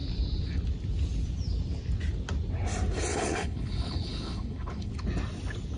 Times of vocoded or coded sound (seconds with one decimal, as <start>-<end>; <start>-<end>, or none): 3.1-4.9